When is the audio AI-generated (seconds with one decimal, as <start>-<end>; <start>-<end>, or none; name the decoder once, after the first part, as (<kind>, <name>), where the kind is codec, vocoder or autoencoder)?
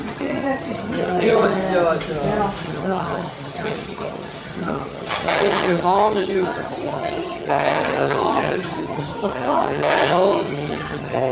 0.0-1.6 (vocoder, HiFi-GAN); 2.6-11.3